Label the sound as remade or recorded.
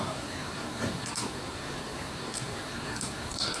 remade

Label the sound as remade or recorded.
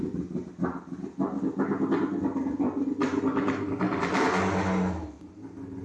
recorded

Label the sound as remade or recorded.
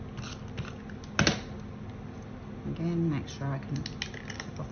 recorded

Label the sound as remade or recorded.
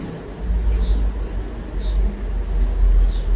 recorded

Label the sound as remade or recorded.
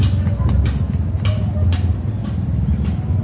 recorded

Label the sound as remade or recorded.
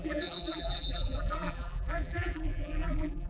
remade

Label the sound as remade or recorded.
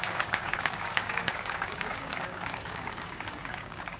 remade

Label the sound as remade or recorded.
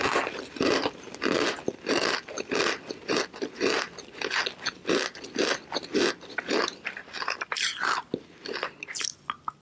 recorded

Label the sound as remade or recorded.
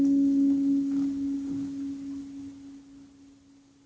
recorded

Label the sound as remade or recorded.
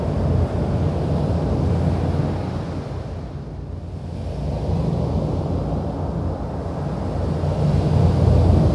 recorded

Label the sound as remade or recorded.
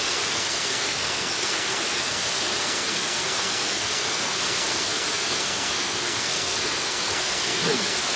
remade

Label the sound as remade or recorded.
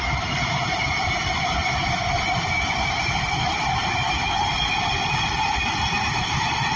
recorded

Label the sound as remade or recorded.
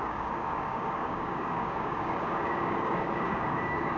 remade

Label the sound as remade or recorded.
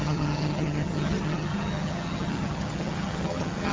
remade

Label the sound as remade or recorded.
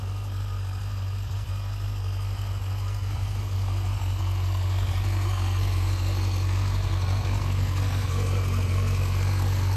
remade